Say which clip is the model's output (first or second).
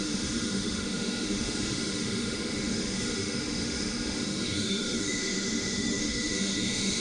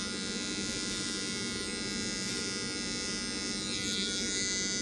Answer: first